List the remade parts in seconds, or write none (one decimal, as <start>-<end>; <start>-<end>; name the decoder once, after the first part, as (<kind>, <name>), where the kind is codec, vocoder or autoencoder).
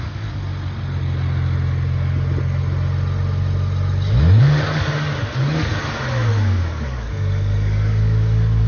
0.0-0.5 (codec, DAC); 4.4-5.7; 6.3-8.7